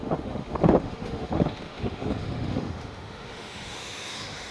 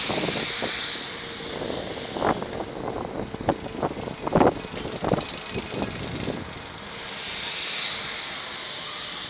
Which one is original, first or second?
second